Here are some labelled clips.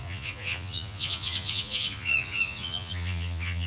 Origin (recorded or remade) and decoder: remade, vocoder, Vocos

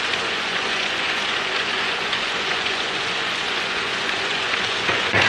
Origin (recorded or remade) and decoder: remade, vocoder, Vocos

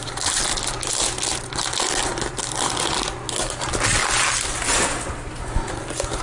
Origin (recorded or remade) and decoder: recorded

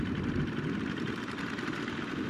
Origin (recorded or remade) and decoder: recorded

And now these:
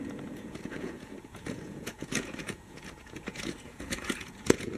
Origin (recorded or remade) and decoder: remade, vocoder, Vocos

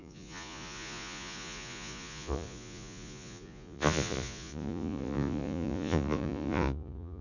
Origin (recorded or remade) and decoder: remade, vocoder, Vocos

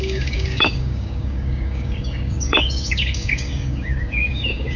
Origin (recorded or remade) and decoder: remade, codec, DAC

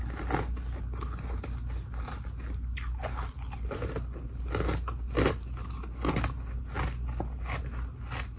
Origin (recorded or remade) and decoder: recorded